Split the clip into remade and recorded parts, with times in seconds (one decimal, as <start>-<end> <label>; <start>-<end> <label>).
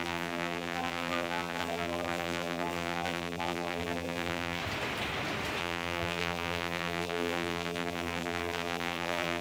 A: 0.0-4.6 remade; 4.6-5.6 recorded; 5.6-9.4 remade